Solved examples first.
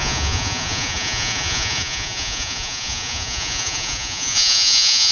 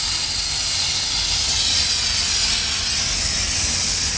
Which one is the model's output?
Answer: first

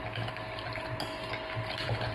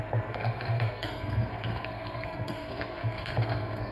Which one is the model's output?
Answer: second